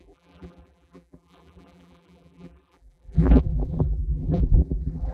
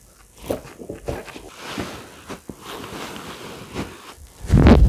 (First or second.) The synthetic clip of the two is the first